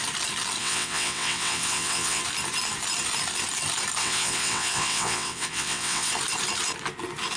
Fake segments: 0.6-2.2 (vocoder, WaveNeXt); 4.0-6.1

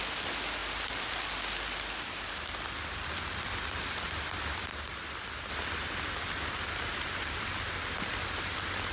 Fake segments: none

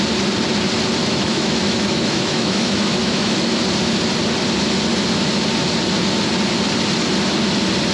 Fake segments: 1.0-3.6 (autoencoder, DAC-VAE)

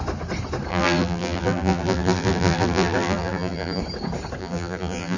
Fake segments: 0.7-3.8 (vocoder, BigVGAN v2); 4.4-5.2

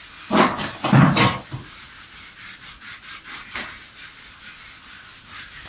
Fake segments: none

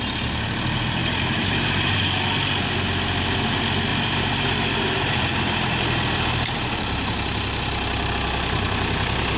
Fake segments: 1.0-2.1 (vocoder, BigVGAN v2); 3.9-8.1